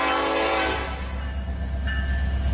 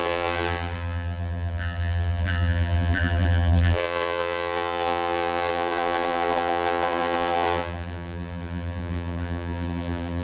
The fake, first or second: second